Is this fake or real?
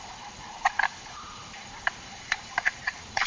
fake